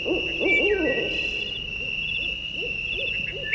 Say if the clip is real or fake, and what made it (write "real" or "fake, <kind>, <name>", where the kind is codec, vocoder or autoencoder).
real